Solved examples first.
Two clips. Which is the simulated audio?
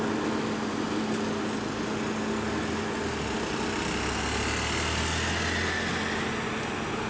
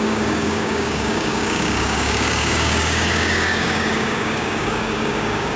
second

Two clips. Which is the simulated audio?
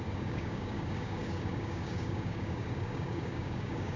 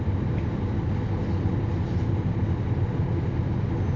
first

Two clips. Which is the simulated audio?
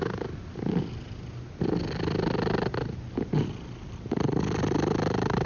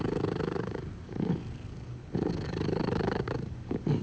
second